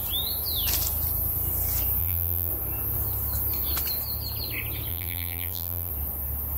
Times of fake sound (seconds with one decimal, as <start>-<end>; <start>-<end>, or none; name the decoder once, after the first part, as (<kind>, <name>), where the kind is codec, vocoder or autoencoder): 2.0-2.5 (vocoder, BigVGAN v2); 4.9-5.9